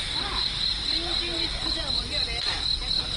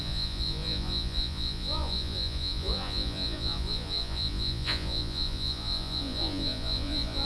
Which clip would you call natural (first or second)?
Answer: first